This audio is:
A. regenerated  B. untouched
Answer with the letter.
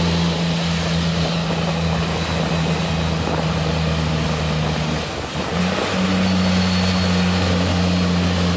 B